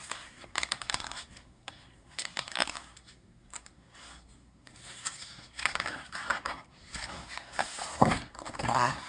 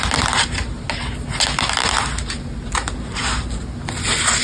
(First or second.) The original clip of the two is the second